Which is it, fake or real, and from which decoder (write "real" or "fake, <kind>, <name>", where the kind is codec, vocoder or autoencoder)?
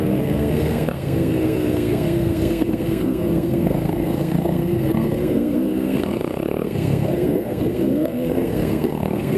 fake, codec, SNAC